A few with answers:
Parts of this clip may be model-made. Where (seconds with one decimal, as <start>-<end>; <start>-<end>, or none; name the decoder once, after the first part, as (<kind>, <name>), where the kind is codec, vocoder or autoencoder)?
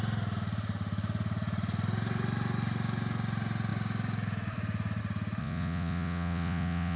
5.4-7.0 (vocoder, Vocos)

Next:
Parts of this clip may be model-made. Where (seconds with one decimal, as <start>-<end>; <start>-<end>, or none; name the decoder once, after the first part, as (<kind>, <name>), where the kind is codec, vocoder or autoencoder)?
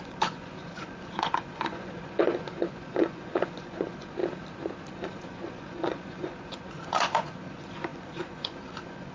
0.0-4.2 (vocoder, Vocos); 4.9-9.1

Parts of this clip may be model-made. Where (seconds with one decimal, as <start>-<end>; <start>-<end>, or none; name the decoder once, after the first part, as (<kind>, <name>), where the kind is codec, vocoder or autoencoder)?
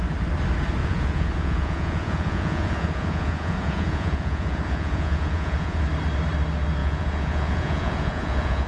0.8-5.8 (vocoder, Vocos); 6.8-8.7